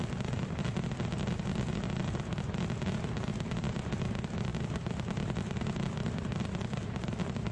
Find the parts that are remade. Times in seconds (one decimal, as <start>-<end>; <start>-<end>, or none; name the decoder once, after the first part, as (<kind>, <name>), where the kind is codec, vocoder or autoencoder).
none